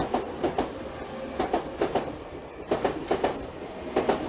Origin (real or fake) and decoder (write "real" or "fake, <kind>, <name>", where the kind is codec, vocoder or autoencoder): real